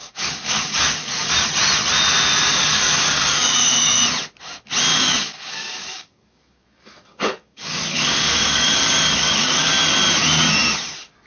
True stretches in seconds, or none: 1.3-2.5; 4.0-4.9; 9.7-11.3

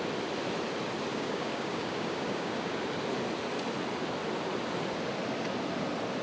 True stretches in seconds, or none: 0.0-1.1; 2.8-6.2

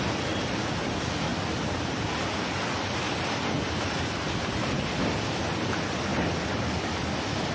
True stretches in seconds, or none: 0.0-7.5

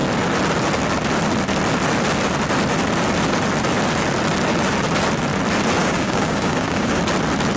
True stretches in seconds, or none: 0.0-5.8; 7.0-7.6